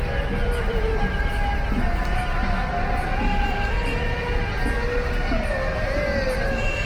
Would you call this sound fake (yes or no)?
no